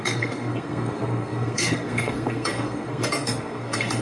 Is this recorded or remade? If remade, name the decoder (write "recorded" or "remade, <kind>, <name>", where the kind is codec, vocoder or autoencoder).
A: remade, codec, SNAC